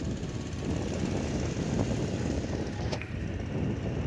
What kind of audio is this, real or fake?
real